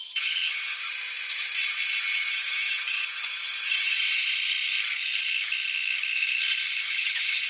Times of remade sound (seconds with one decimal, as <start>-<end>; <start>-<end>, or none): 0.0-0.8; 2.3-4.2; 6.8-7.5